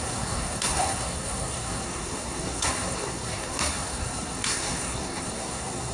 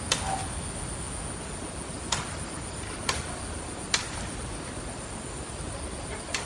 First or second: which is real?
second